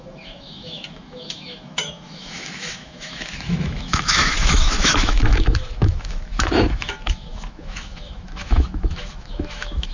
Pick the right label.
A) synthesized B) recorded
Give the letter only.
A